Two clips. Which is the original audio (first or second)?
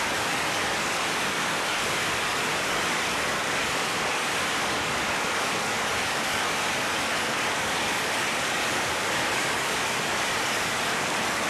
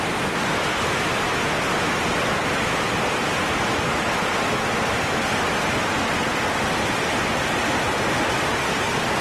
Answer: second